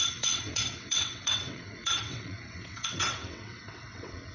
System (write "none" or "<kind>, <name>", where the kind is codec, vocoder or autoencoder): vocoder, WaveNeXt